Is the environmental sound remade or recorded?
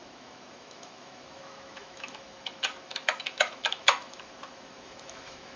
remade